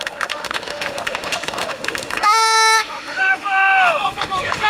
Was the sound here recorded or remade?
remade